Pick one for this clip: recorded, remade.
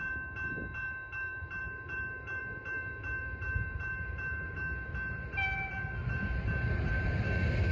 remade